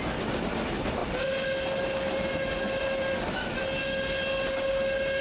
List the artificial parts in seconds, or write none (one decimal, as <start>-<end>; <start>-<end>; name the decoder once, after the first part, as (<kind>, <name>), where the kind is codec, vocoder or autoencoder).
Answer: none